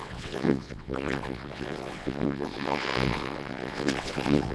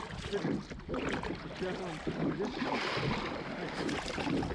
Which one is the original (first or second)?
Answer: second